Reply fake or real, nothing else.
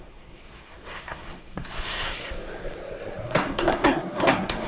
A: fake